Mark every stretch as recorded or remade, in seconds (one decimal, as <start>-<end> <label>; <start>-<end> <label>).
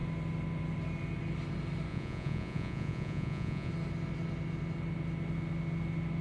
0.0-1.9 recorded; 1.9-3.7 remade; 3.7-6.2 recorded